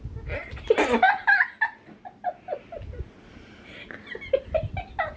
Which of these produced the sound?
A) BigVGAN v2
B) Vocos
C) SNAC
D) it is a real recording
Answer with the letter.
D